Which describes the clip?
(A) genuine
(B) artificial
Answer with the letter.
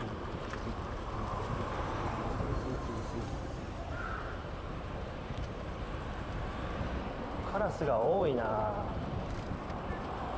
B